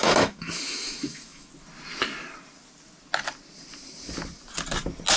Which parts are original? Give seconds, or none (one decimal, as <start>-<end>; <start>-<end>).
1.5-5.2